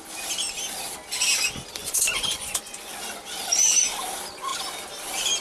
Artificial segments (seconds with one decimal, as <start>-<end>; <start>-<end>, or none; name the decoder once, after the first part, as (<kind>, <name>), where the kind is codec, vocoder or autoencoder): 1.8-2.9 (vocoder, Vocos)